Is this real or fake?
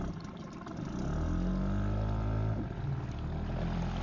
real